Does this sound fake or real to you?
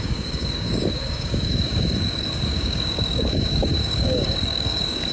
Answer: fake